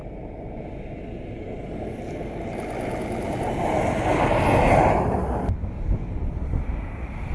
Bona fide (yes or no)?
yes